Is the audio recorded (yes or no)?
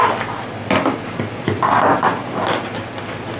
yes